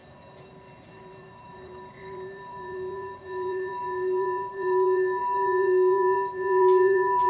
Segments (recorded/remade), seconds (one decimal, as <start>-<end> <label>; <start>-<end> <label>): 0.0-7.3 remade